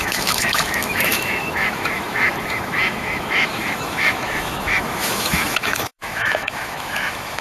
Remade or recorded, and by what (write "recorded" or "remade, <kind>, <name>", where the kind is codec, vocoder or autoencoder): remade, autoencoder, DAC-VAE